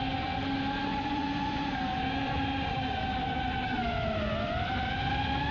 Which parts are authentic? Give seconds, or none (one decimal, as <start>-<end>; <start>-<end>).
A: 0.0-0.9; 1.7-5.5